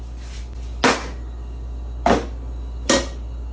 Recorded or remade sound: recorded